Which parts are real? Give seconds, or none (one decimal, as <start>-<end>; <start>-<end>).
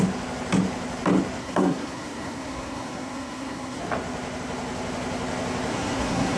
0.0-1.4; 3.8-5.7